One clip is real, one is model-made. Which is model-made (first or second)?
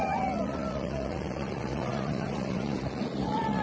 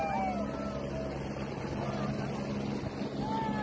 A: first